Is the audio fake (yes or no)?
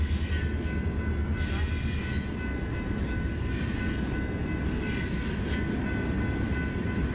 no